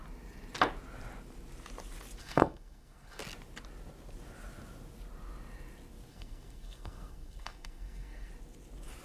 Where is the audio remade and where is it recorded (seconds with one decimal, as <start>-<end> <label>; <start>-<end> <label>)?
0.0-2.2 recorded; 2.2-3.2 remade; 3.2-6.1 recorded; 6.1-8.3 remade; 8.3-9.0 recorded